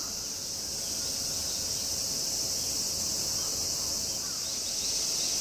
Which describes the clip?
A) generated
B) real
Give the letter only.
B